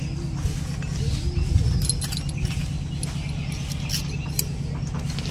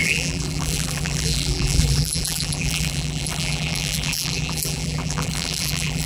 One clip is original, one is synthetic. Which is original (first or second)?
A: first